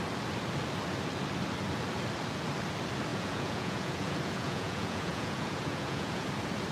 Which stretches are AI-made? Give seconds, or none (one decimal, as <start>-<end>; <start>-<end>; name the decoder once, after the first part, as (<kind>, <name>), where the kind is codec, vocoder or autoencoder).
3.1-6.3 (vocoder, Vocos)